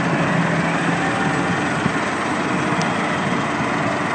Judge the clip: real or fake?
real